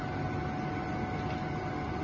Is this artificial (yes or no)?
no